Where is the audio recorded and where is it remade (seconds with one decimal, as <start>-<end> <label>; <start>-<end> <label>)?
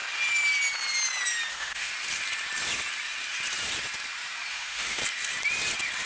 0.0-1.5 recorded; 1.5-1.9 remade; 1.9-4.5 recorded; 4.5-5.0 remade; 5.0-6.1 recorded